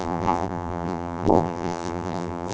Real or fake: fake